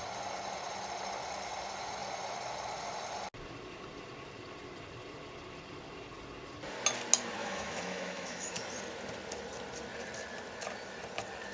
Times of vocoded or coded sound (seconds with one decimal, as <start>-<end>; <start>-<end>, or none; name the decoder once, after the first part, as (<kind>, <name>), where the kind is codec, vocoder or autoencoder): 7.4-8.5 (autoencoder, DAC-VAE)